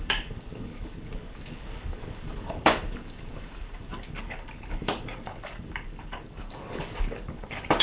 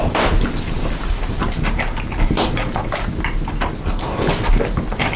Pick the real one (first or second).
second